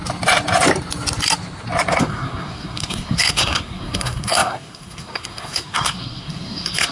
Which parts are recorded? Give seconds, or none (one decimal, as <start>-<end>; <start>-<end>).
0.0-2.0